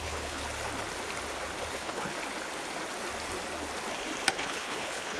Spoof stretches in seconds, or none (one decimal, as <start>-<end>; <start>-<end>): 0.0-0.4; 1.7-2.1; 4.3-5.2